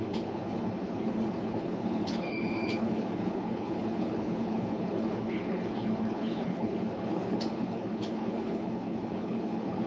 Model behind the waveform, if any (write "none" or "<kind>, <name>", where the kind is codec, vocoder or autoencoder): codec, HILCodec